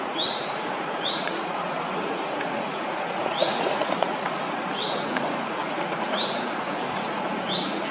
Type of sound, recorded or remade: remade